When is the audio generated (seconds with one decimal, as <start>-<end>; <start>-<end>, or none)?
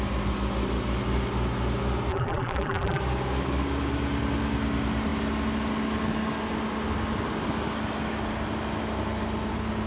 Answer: 2.1-3.0